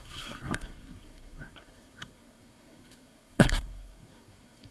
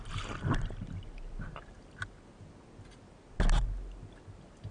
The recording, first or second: second